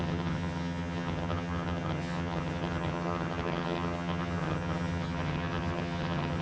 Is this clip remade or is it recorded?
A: remade